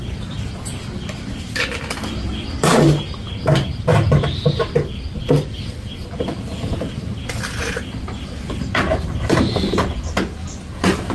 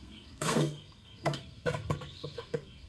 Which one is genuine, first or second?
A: first